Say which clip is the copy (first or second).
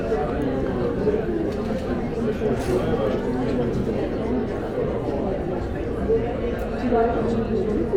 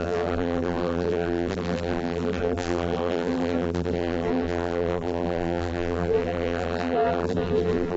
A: second